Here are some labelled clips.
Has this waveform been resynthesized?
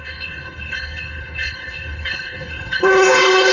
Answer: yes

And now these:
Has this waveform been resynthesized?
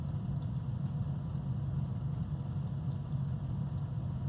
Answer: yes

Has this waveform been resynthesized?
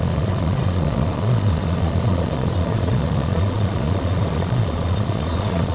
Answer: yes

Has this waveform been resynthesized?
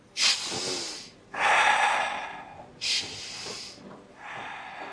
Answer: no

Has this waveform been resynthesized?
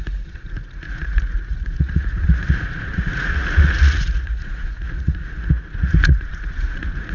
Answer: yes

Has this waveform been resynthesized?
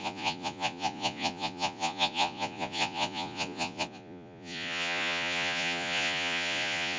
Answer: yes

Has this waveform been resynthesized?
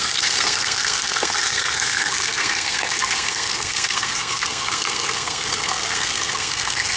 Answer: yes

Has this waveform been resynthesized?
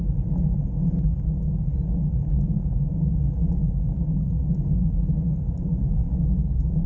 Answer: no